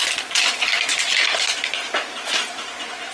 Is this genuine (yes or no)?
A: yes